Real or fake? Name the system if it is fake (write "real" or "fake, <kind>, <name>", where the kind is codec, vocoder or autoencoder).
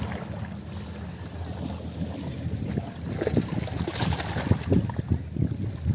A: real